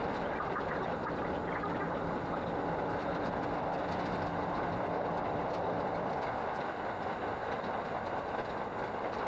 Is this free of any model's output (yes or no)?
yes